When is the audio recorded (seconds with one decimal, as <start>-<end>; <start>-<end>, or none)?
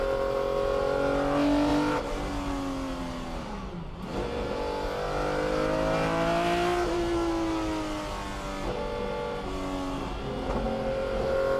0.0-11.6